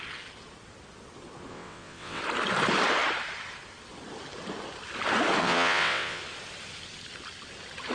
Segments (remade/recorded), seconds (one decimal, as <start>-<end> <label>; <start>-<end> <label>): 0.0-1.5 recorded; 1.5-2.2 remade; 2.2-5.4 recorded; 5.4-6.2 remade; 6.2-7.9 recorded